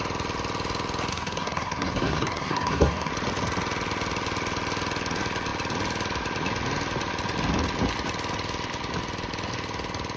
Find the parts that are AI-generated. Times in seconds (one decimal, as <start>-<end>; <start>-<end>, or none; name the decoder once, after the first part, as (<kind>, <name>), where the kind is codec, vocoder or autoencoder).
1.1-3.1 (codec, SNAC)